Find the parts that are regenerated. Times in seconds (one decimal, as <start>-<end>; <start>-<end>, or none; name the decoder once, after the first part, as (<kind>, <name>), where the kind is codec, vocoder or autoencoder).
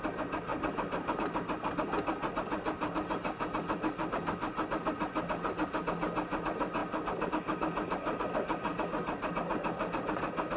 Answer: 0.5-1.2 (vocoder, BigVGAN v2)